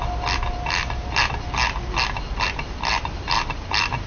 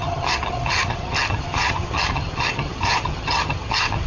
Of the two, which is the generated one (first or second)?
second